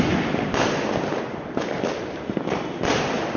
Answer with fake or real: real